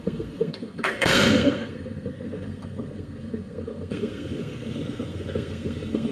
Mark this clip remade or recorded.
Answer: remade